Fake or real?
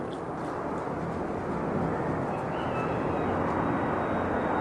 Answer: real